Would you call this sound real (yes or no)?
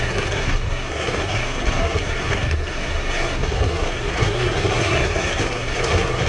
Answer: no